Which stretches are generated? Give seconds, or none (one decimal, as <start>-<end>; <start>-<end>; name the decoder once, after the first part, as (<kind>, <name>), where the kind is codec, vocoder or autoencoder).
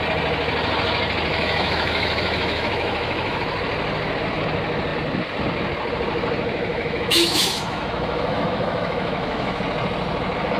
1.3-3.4 (autoencoder, DAC-VAE); 6.7-9.6